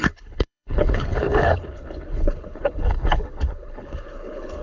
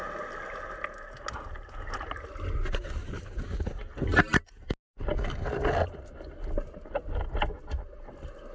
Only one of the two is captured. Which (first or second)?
second